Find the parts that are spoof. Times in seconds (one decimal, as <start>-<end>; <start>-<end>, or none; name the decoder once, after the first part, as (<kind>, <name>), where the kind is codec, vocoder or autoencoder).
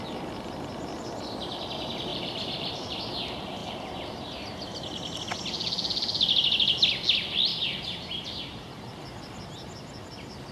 2.1-3.0 (vocoder, BigVGAN v2); 3.6-5.2; 7.5-8.8